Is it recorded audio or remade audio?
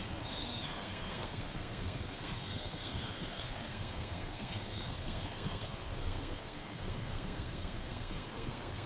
remade